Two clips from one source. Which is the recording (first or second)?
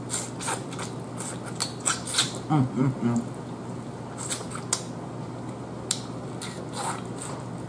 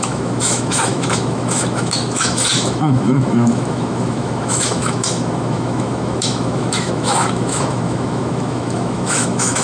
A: first